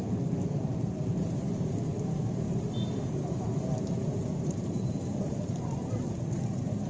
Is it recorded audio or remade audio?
remade